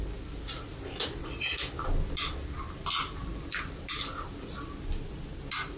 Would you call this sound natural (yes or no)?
yes